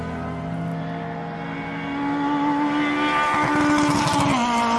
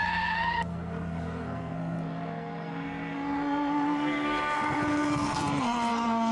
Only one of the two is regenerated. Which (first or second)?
second